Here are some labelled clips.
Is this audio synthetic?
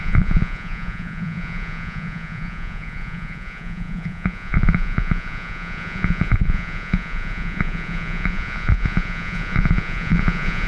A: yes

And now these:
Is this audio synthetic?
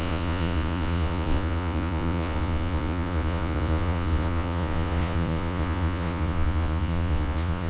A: yes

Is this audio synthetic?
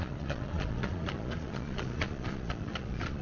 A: yes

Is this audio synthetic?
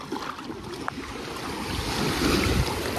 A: no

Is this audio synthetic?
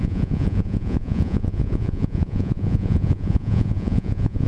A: yes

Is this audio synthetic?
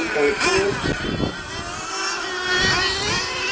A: no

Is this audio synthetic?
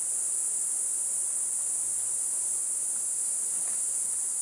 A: no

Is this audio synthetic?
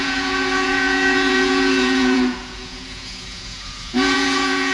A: yes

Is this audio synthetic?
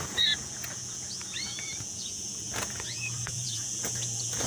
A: yes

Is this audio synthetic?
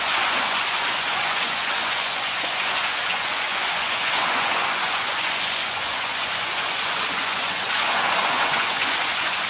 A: yes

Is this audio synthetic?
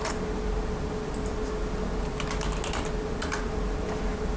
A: no